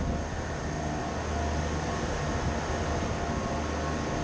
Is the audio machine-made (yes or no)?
no